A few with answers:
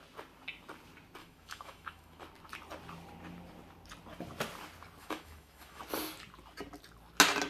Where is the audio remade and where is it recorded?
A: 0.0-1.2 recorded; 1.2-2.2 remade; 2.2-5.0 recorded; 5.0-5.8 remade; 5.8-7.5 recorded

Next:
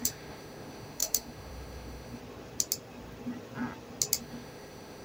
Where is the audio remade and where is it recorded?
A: 0.0-2.2 remade; 2.2-4.2 recorded; 4.2-5.0 remade

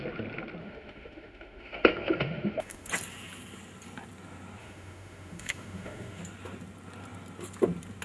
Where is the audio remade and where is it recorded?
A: 0.0-0.6 recorded; 0.6-2.9 remade; 2.9-4.6 recorded; 4.6-6.2 remade; 6.2-8.0 recorded

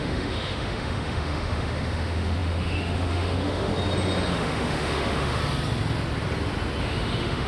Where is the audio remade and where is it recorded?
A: 0.0-3.7 remade; 3.7-4.3 recorded; 4.3-5.4 remade; 5.4-6.8 recorded; 6.8-7.5 remade

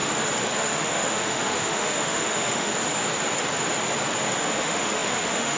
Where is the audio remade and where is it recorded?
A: 0.0-0.6 recorded; 0.6-2.7 remade; 2.7-4.4 recorded; 4.4-5.6 remade